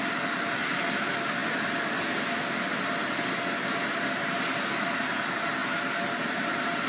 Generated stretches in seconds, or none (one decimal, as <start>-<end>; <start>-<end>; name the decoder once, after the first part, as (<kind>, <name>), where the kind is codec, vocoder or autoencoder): none